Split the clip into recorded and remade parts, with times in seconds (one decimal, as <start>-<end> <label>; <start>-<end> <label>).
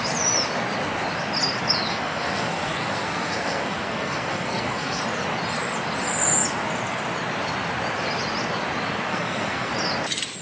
0.0-1.9 recorded; 1.9-5.0 remade; 5.0-9.1 recorded; 9.1-9.7 remade; 9.7-10.4 recorded